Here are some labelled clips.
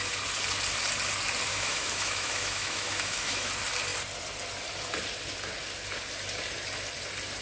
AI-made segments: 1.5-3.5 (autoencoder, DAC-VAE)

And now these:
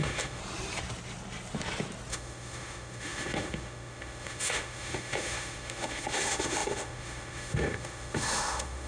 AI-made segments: 0.0-0.4 (autoencoder, DAC-VAE); 2.1-8.9

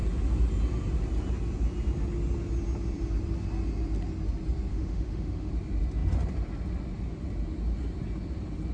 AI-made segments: 4.7-5.5 (autoencoder, DAC-VAE)

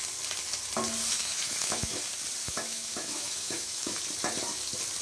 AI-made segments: 1.1-2.0 (autoencoder, DAC-VAE); 2.4-4.0

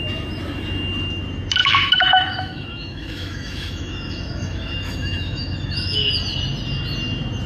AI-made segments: 1.6-6.1 (autoencoder, DAC-VAE)

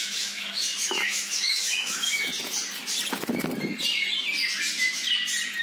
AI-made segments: 0.0-2.3 (autoencoder, DAC-VAE)

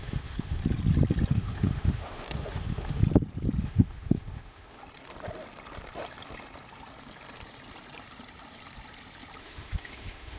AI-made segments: 0.0-0.6 (autoencoder, DAC-VAE); 1.3-3.0; 3.6-4.8; 9.4-10.4

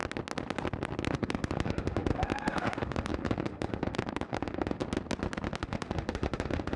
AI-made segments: 1.1-4.8 (autoencoder, DAC-VAE); 5.6-6.8